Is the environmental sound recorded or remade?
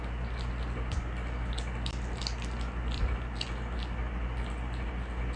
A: recorded